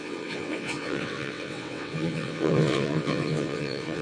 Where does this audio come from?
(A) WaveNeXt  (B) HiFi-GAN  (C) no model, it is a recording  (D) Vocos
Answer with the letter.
A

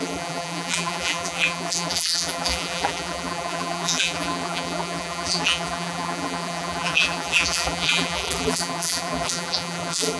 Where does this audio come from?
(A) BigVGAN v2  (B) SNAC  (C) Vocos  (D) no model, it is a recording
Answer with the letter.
A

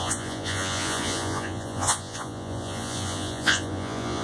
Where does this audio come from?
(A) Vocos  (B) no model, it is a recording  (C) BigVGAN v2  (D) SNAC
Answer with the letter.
A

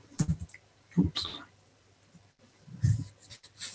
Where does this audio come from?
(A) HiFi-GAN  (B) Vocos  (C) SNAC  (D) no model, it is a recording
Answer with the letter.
D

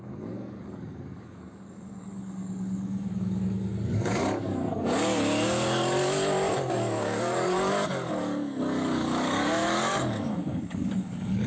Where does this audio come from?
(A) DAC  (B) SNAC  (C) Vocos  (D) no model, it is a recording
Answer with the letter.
A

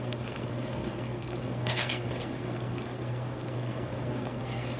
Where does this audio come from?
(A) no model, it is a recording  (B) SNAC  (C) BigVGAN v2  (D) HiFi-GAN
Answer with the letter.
B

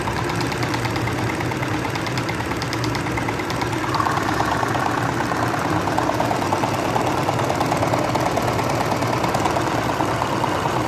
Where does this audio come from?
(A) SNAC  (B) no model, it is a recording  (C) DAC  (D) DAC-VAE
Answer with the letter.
B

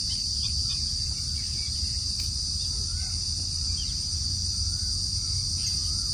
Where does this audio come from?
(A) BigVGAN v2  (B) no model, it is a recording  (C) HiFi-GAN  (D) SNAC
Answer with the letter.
B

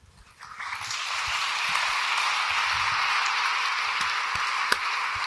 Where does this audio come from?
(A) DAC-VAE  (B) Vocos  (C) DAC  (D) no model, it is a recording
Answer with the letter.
D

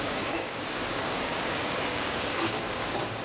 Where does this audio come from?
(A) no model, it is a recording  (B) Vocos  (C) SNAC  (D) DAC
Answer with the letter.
D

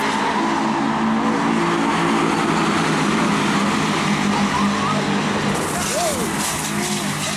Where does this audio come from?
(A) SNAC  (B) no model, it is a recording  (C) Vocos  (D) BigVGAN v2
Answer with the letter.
B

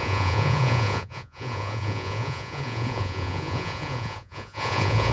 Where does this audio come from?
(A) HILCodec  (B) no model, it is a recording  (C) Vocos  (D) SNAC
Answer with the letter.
C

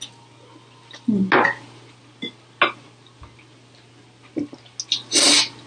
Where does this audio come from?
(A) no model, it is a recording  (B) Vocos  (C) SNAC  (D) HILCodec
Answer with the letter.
A